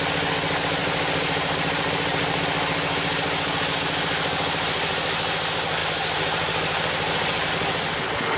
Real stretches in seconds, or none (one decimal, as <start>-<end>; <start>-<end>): 0.0-0.8; 2.4-5.8; 7.5-8.4